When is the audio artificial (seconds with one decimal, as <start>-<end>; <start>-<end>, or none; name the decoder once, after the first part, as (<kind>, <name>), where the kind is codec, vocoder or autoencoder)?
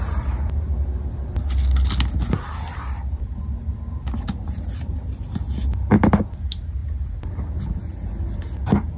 none